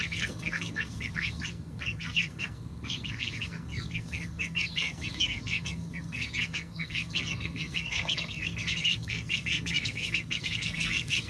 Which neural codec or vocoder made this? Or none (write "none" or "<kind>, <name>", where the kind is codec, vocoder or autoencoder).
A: codec, SNAC